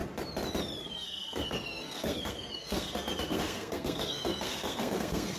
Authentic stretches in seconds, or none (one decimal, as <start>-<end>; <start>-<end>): 0.0-0.8